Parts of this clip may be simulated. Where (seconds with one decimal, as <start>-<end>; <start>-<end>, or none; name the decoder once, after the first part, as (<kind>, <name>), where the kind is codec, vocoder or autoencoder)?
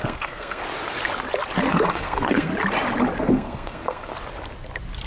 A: 0.0-0.6 (codec, SNAC); 1.7-2.5; 3.2-4.1